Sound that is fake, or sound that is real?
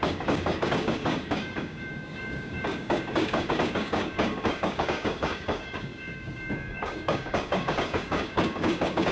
fake